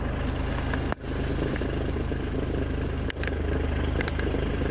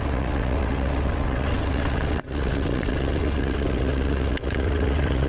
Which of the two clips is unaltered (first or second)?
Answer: first